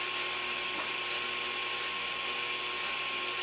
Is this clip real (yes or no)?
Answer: yes